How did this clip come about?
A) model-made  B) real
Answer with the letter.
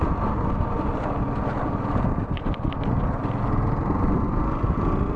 B